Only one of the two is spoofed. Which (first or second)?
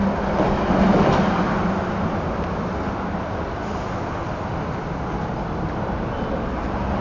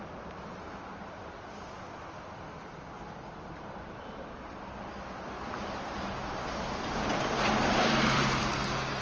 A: second